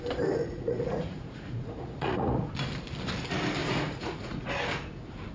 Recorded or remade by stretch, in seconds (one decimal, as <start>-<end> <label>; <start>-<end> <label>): 0.0-0.4 recorded; 0.4-2.5 remade; 2.5-3.6 recorded; 3.6-4.5 remade; 4.5-5.3 recorded